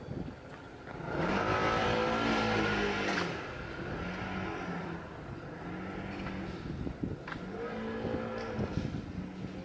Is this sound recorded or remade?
recorded